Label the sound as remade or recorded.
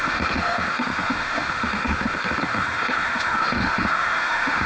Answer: remade